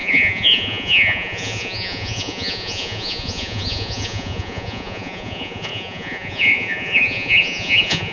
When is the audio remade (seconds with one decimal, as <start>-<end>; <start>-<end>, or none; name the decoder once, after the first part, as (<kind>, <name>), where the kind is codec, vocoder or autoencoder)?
0.0-8.1 (vocoder, Vocos)